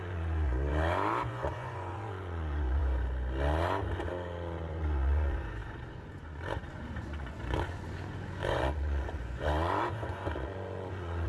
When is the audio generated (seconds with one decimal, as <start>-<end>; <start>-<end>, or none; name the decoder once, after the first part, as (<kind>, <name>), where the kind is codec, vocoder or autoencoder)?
0.0-0.7 (vocoder, Vocos); 1.3-2.8; 4.7-11.3